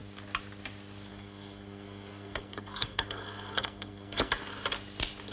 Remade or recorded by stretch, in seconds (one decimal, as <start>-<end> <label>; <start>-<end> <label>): 0.0-1.1 recorded; 1.1-4.3 remade; 4.3-5.3 recorded